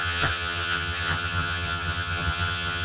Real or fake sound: fake